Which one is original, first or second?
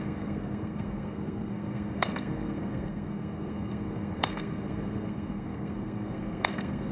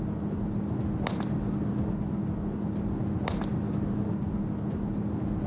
second